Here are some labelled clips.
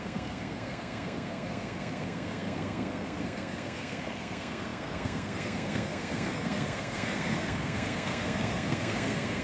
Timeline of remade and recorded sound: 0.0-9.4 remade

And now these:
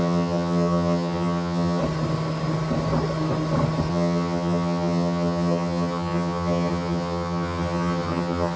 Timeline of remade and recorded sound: 0.0-1.8 remade; 1.8-3.9 recorded; 3.9-8.6 remade

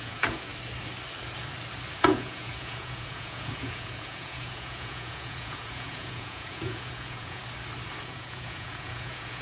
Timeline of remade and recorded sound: 0.0-0.5 remade; 0.5-2.0 recorded; 2.0-7.4 remade; 7.4-8.0 recorded; 8.0-9.4 remade

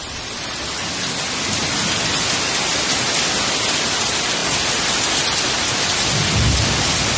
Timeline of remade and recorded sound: 0.0-7.2 recorded

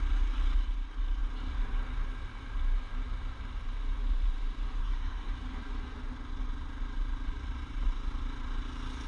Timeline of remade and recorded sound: 0.0-4.8 recorded; 4.8-5.3 remade; 5.3-9.1 recorded

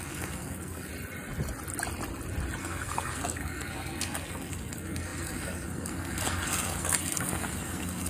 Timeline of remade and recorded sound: 0.0-0.9 remade; 0.9-2.6 recorded; 2.6-8.1 remade